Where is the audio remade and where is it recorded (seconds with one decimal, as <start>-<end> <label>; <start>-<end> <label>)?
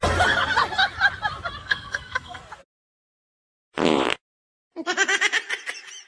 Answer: 0.0-1.6 recorded; 1.6-2.4 remade; 2.4-6.1 recorded